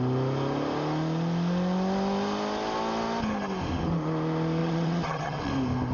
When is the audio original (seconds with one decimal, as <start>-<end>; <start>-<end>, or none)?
0.0-4.6; 5.5-5.9